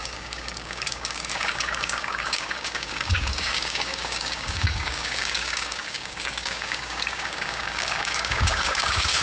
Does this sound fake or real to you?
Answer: fake